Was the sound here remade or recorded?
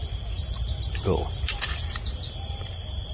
remade